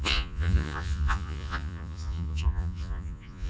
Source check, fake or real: fake